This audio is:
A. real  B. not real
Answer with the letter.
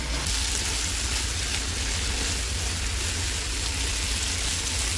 A